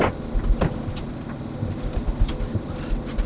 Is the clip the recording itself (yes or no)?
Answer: yes